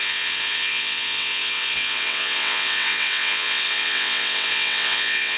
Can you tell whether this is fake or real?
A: fake